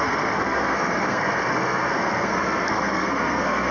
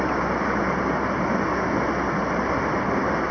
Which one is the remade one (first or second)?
first